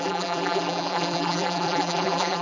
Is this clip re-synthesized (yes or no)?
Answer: yes